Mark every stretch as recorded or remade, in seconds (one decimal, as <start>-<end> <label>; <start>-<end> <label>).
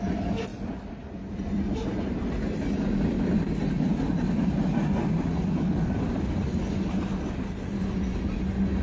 0.0-0.5 recorded; 0.5-2.3 remade; 2.3-8.8 recorded